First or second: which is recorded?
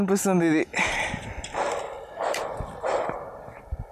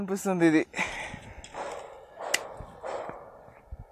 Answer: second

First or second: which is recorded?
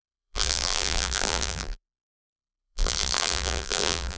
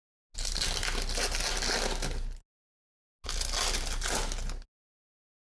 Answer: second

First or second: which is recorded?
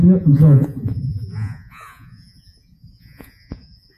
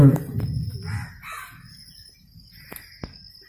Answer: second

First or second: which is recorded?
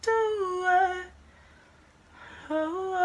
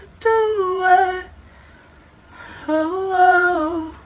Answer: first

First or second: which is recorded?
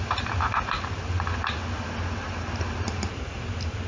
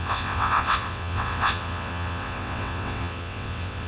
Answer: first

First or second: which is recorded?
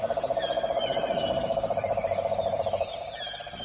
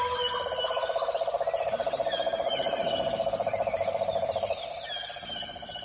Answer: first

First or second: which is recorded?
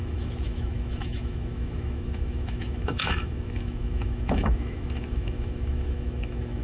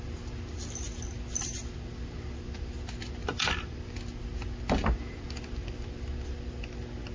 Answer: second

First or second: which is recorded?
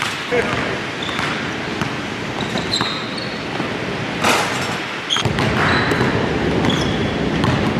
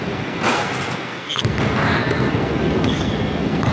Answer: first